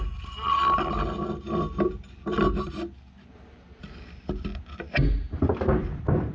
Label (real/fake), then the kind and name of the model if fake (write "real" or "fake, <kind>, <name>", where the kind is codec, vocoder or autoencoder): real